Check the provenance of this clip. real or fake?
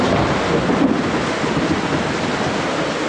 real